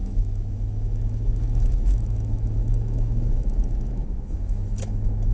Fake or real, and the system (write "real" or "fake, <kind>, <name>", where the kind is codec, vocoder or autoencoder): fake, autoencoder, DAC-VAE